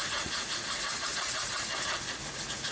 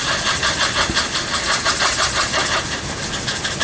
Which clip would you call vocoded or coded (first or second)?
first